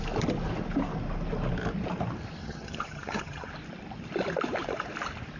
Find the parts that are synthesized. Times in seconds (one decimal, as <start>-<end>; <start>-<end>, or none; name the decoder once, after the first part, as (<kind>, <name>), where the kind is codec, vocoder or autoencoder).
2.4-3.5 (vocoder, HiFi-GAN)